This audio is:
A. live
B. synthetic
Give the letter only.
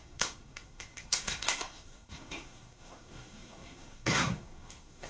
B